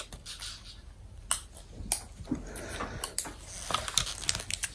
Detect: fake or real real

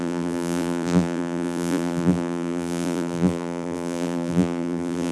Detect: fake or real fake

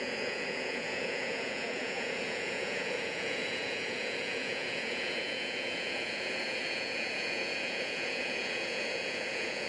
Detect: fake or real fake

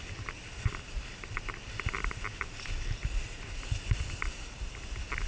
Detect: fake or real real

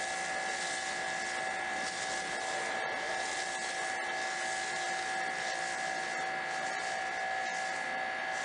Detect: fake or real real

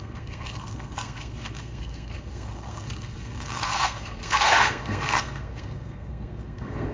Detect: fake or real fake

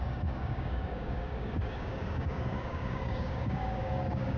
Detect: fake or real fake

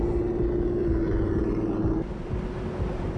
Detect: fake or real real